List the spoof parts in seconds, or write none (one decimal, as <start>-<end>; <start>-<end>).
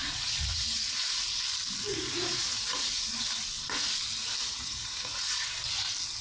0.0-1.3; 1.9-3.1; 4.4-5.5